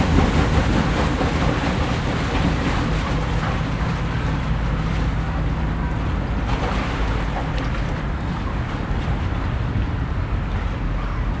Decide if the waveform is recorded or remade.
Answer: recorded